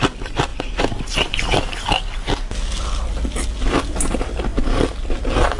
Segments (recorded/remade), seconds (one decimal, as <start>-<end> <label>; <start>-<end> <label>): 0.0-5.6 recorded

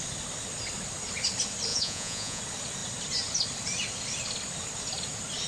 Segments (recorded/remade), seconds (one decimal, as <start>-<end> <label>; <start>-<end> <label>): 0.0-1.7 recorded; 1.7-2.4 remade; 2.4-5.5 recorded

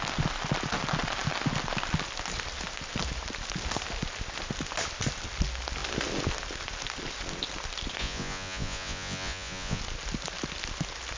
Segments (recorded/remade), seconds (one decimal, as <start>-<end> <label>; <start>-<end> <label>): 0.0-8.0 recorded; 8.0-9.8 remade; 9.8-11.2 recorded